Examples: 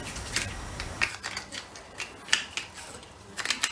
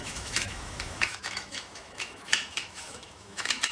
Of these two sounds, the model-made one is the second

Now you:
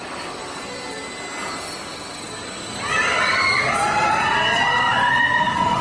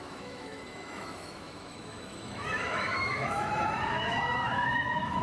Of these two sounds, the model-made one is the second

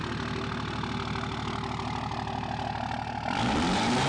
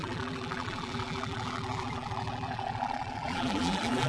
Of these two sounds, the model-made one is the second